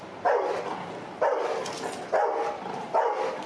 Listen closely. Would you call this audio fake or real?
real